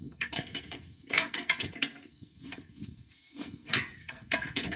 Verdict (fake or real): fake